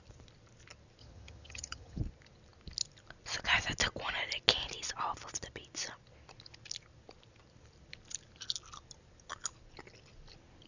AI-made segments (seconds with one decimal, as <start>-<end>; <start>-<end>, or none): 1.0-2.0